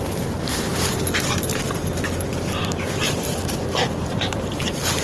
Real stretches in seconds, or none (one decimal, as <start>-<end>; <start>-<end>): 0.7-2.8